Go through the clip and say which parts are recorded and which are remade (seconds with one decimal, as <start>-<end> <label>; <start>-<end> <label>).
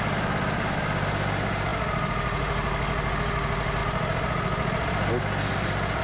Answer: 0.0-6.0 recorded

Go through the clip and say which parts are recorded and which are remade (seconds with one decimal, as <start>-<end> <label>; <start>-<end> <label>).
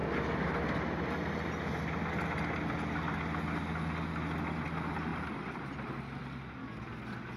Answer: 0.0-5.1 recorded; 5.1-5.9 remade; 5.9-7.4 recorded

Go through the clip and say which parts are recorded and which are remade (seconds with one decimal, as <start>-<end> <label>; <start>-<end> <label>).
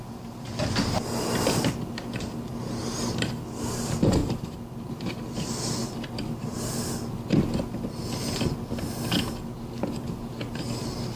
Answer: 0.0-5.8 remade; 5.8-11.2 recorded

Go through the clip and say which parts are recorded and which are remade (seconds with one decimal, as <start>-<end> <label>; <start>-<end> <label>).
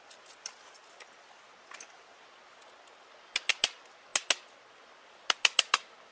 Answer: 0.0-0.8 remade; 0.8-3.5 recorded; 3.5-4.1 remade; 4.1-4.7 recorded; 4.7-6.1 remade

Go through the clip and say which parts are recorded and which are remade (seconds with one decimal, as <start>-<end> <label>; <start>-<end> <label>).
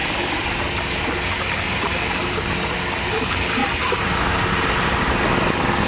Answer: 0.0-3.6 recorded; 3.6-4.1 remade; 4.1-5.9 recorded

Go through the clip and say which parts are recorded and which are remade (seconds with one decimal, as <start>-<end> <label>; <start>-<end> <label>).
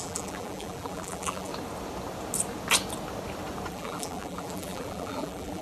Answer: 0.0-1.5 remade; 1.5-3.7 recorded; 3.7-5.6 remade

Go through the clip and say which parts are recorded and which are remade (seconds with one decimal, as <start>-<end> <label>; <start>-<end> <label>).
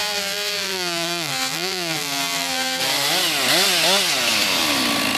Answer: 0.0-2.8 remade; 2.8-5.2 recorded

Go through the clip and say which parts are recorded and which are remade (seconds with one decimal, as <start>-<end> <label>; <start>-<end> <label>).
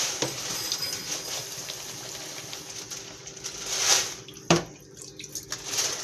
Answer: 0.0-1.4 recorded; 1.4-5.0 remade; 5.0-6.0 recorded